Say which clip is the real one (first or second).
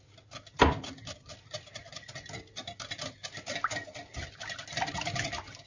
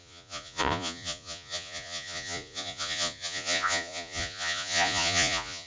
first